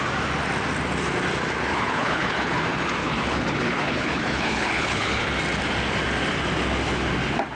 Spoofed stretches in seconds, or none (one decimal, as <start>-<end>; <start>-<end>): 1.7-2.6; 3.0-5.3